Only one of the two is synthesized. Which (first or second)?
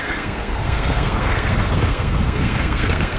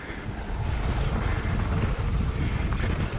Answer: first